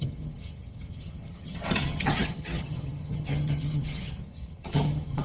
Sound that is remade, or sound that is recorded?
remade